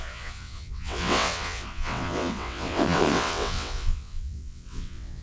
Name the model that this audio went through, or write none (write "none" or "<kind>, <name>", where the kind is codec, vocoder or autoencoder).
vocoder, WaveNeXt